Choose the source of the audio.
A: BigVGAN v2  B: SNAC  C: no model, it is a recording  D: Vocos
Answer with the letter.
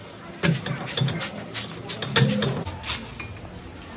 C